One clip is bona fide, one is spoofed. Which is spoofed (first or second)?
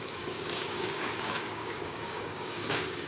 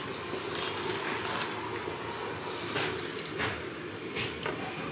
first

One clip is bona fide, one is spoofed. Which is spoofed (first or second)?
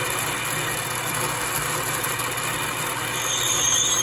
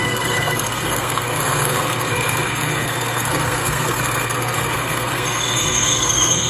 second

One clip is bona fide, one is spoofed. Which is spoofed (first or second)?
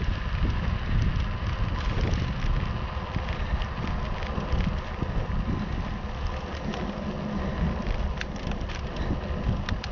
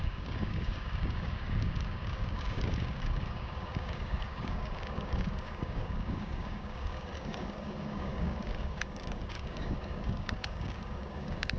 second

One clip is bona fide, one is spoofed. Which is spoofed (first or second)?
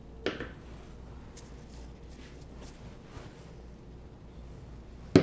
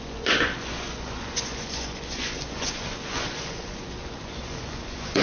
second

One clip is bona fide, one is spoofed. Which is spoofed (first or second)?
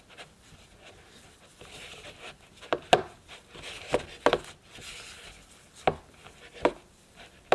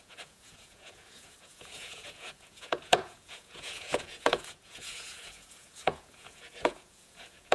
second